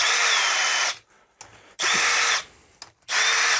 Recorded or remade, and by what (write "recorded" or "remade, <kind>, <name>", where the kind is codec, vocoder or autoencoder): recorded